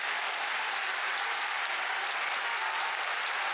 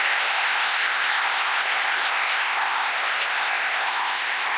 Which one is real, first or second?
first